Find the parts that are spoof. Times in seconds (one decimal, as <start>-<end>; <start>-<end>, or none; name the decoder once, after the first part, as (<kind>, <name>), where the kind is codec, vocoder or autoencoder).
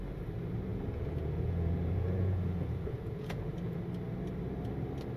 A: 0.7-3.8 (vocoder, Vocos)